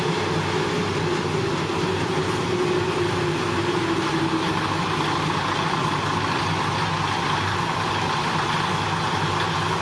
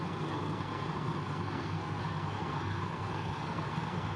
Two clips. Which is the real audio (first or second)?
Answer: first